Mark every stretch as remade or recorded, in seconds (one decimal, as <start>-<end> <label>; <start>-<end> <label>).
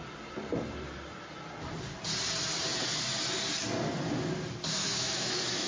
0.0-4.8 recorded; 4.8-5.7 remade